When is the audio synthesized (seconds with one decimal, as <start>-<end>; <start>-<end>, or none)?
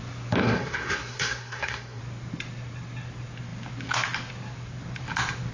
0.4-2.0